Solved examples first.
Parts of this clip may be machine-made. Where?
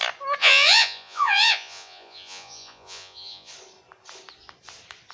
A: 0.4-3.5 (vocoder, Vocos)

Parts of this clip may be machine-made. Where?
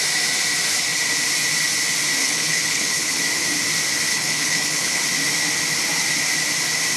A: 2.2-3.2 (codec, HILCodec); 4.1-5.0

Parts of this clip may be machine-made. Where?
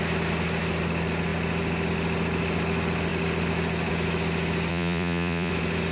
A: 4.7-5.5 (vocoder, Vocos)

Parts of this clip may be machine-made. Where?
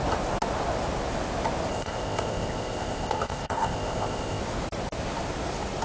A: 1.7-4.4 (codec, ZipCodec)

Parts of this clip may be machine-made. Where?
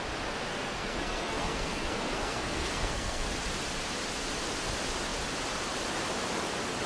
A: 0.5-3.3 (codec, SNAC)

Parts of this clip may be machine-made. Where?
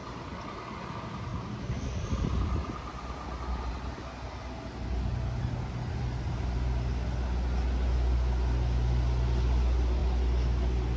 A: none